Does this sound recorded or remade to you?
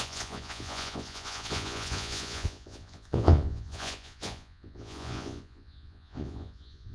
remade